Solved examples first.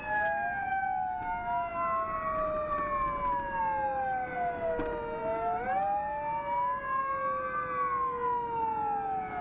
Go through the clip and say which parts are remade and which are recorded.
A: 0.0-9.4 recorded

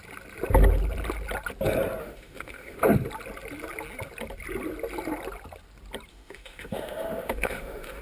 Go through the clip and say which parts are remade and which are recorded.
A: 0.0-2.0 recorded; 2.0-2.8 remade; 2.8-6.1 recorded; 6.1-8.0 remade

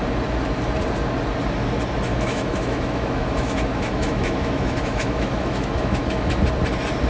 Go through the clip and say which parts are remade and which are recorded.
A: 0.0-2.1 recorded; 2.1-6.4 remade; 6.4-7.1 recorded

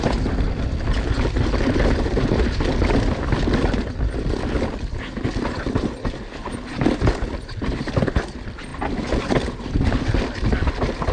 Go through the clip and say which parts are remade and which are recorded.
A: 0.0-11.1 recorded

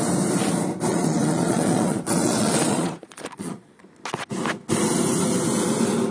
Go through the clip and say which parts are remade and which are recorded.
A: 0.0-0.9 recorded; 0.9-3.8 remade; 3.8-6.1 recorded

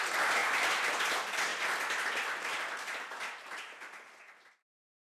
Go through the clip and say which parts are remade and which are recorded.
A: 0.0-5.0 recorded

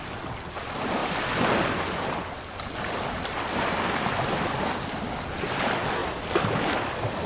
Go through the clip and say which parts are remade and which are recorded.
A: 0.0-6.0 recorded; 6.0-6.6 remade; 6.6-7.3 recorded